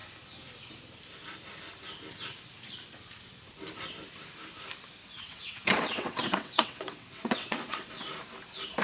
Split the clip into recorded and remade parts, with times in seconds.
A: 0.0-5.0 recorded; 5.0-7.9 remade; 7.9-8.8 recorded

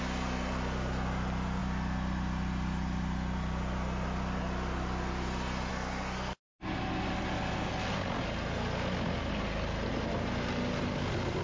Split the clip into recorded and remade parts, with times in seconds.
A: 0.0-11.4 recorded

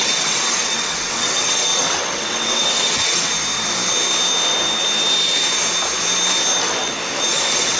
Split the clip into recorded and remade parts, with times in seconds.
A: 0.0-3.3 remade; 3.3-7.3 recorded; 7.3-7.8 remade

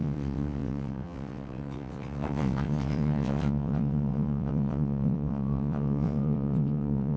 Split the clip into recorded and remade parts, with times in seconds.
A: 0.0-7.2 remade

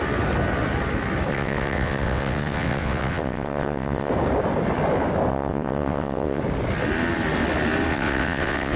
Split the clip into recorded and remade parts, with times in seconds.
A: 0.0-1.3 recorded; 1.3-4.1 remade; 4.1-5.3 recorded; 5.3-6.4 remade; 6.4-7.9 recorded; 7.9-8.8 remade